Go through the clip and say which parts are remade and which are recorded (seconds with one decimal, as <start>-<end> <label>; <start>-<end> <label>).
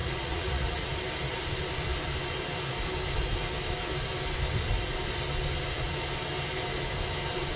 0.0-0.9 remade; 0.9-7.6 recorded